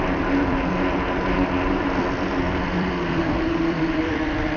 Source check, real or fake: fake